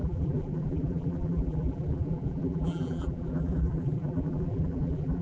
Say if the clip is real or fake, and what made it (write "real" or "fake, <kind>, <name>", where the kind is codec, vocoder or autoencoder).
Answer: fake, vocoder, BigVGAN v2